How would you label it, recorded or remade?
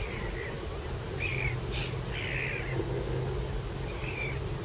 recorded